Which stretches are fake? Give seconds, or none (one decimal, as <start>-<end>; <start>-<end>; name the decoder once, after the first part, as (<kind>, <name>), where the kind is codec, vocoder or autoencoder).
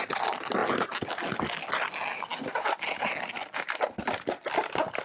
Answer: none